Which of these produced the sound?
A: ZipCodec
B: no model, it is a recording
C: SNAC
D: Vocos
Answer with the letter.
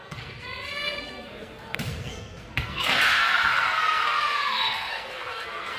C